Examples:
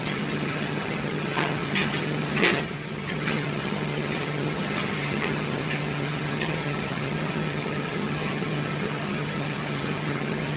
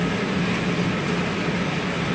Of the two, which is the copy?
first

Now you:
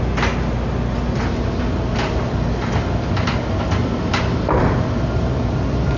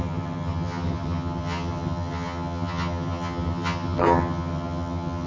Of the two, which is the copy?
second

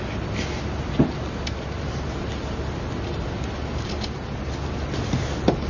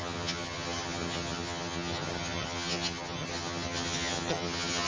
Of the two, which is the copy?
second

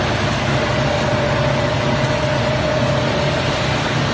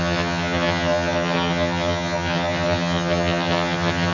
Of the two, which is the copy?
second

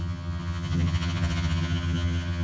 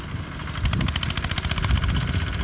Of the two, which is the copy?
first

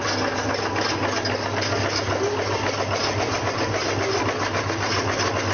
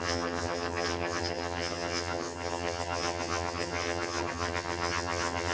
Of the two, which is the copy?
second